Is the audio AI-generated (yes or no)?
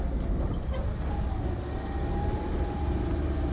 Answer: no